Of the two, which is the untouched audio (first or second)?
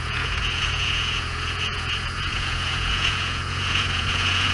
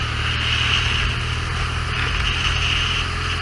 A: second